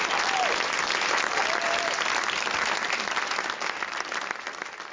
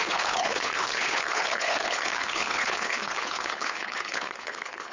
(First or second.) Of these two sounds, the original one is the first